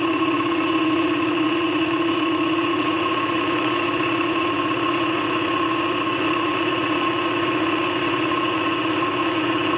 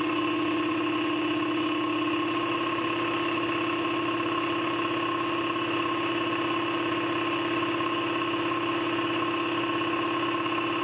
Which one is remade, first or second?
first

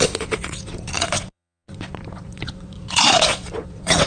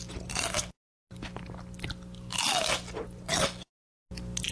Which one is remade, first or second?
first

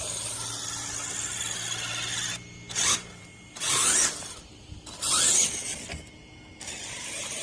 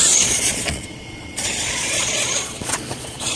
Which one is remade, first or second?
second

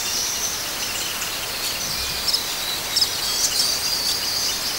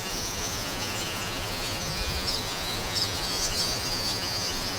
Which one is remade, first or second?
second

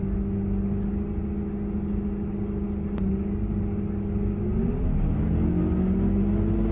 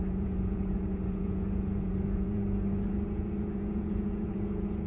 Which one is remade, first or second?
second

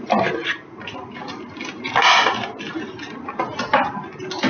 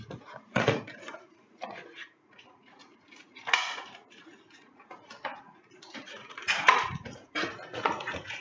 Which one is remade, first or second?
second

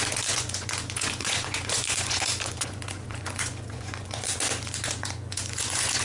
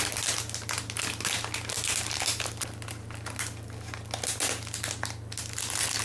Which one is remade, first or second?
first